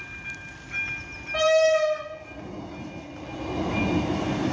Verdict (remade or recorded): recorded